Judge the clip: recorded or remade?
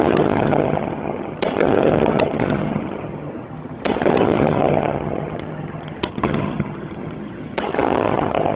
remade